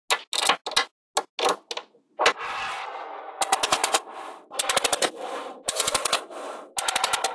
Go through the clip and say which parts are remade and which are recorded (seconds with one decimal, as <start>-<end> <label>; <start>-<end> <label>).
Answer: 0.0-7.3 recorded